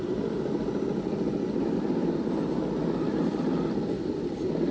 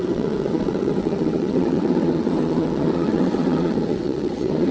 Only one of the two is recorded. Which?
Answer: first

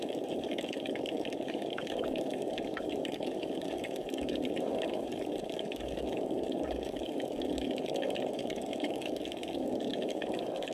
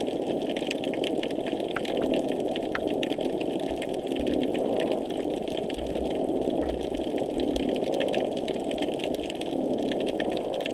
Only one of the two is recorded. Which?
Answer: second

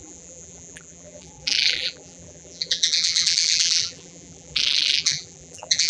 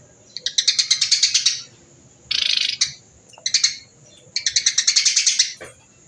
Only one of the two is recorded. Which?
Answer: second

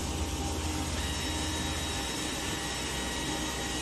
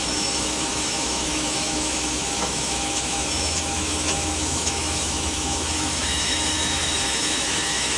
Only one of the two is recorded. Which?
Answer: first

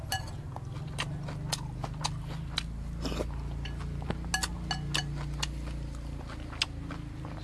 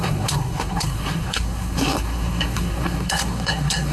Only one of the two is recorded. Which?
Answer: first